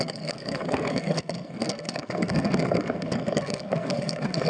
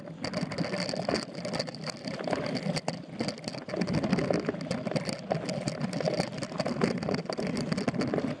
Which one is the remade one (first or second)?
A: first